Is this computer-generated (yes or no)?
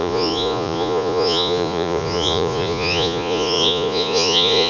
yes